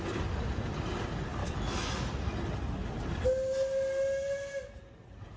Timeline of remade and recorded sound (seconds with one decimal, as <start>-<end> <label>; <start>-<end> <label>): 0.0-1.4 recorded; 1.4-2.1 remade; 2.1-5.4 recorded